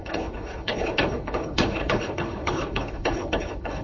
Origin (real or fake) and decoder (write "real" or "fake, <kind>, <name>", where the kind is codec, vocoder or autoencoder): fake, codec, HILCodec